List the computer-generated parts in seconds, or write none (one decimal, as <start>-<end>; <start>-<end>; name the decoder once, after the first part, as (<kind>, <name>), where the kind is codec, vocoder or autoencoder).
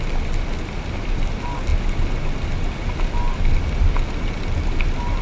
none